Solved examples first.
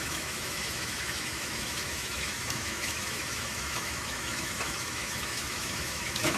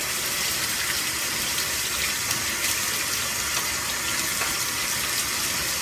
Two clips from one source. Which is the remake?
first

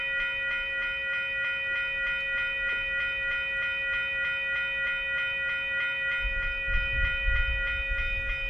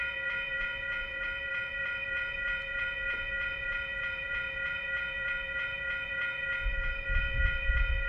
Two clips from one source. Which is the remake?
second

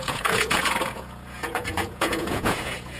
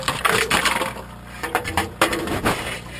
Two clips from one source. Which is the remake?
first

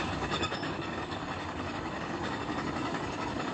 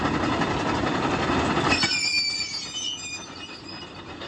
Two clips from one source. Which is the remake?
first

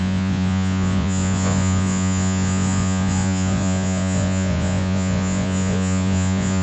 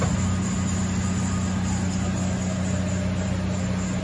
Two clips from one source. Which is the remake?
first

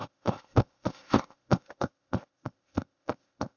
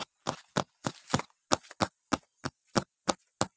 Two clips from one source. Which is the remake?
first